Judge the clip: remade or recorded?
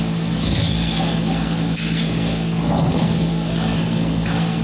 remade